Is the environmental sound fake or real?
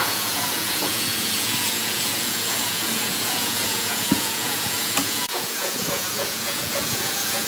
fake